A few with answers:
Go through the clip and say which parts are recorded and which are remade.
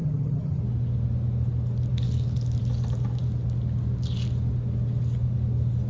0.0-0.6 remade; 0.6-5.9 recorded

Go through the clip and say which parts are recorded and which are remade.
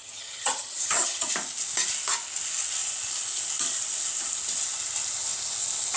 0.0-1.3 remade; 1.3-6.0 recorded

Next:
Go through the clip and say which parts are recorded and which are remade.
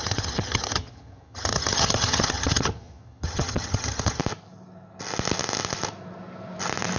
0.0-4.2 remade; 4.2-7.0 recorded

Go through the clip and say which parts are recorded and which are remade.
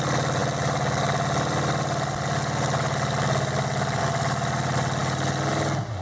0.0-6.0 recorded